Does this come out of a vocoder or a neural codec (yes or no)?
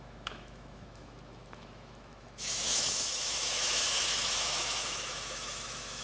yes